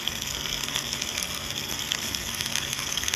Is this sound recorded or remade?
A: remade